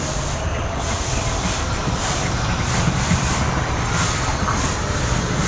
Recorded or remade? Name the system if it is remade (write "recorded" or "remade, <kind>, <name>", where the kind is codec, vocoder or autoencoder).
remade, vocoder, BigVGAN v2